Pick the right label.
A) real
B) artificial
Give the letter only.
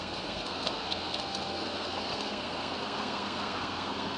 B